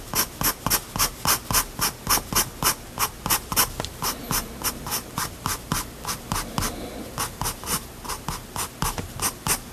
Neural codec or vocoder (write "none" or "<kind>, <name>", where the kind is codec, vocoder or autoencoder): none